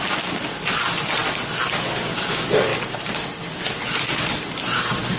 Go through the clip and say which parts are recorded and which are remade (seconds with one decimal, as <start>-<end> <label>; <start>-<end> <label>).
0.0-5.2 recorded